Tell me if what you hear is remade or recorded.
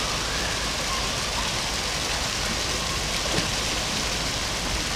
recorded